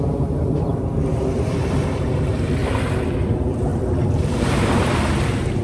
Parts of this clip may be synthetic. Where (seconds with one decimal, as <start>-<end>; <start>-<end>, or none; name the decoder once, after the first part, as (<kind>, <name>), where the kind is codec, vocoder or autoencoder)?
0.0-2.6 (vocoder, BigVGAN v2); 3.1-3.7; 4.2-5.6